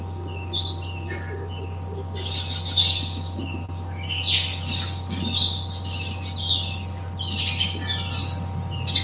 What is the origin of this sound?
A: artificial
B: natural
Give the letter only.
B